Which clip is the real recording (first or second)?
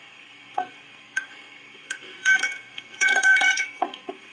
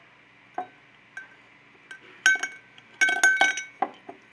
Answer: second